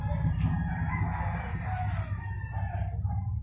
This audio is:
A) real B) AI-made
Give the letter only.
A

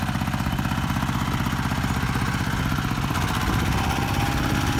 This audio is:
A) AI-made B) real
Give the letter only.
B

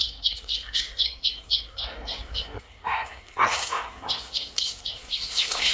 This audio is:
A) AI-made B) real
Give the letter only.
A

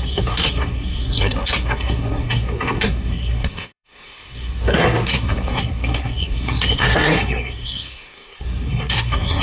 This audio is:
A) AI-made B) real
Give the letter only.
A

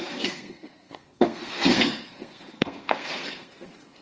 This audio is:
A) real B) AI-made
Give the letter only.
B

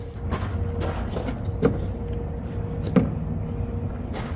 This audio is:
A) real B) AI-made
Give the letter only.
A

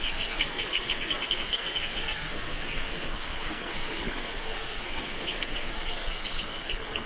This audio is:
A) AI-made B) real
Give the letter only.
A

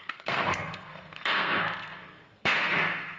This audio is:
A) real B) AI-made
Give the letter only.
B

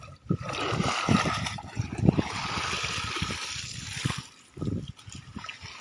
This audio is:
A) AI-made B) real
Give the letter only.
B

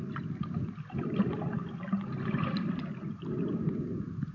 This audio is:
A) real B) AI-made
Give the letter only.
A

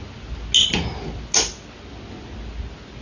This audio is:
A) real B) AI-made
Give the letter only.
A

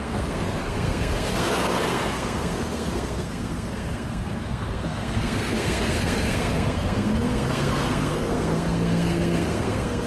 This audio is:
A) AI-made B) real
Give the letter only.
A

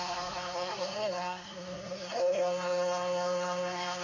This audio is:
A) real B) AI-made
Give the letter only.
B